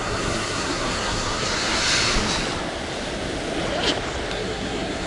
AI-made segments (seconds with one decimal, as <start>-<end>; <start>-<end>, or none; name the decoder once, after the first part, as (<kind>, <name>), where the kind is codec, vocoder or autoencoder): 0.0-1.8 (codec, SNAC); 4.3-5.1